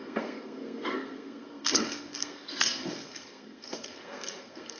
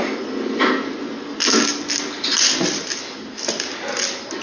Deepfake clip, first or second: first